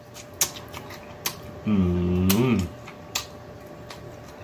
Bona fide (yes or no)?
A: yes